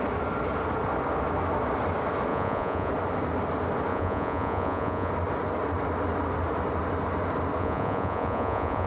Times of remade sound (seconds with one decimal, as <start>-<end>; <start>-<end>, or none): 2.3-2.9; 3.9-5.1; 7.6-8.9

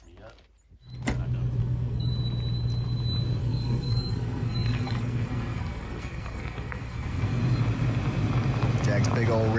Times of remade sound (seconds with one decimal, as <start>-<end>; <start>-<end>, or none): 1.6-2.1; 3.4-7.4